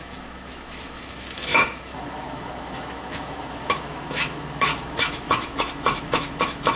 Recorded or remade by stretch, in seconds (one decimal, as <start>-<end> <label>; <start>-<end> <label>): 0.0-6.8 remade

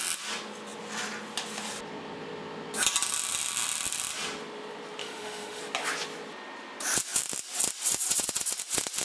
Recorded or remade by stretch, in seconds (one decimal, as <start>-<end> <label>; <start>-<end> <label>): 0.0-5.0 recorded; 5.0-5.6 remade; 5.6-9.0 recorded

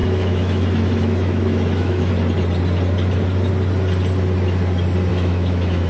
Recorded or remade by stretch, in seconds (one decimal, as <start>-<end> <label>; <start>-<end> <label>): 0.0-2.1 remade; 2.1-5.1 recorded; 5.1-5.9 remade

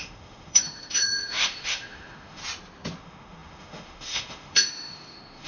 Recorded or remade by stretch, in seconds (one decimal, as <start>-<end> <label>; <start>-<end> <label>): 0.0-2.4 remade; 2.4-3.0 recorded; 3.0-5.5 remade

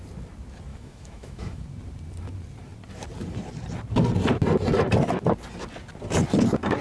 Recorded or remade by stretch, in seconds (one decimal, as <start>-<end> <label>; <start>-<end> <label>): 0.0-0.7 recorded; 0.7-1.6 remade; 1.6-6.8 recorded

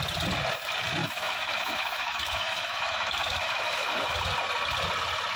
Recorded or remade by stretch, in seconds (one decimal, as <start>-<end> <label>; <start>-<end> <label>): 0.0-1.0 recorded; 1.0-4.2 remade; 4.2-5.4 recorded

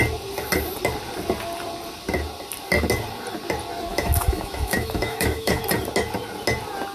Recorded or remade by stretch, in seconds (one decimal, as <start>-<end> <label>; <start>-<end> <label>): 0.0-3.9 recorded; 3.9-5.6 remade; 5.6-6.9 recorded